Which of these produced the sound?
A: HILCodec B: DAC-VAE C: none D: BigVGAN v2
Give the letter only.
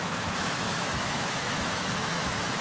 B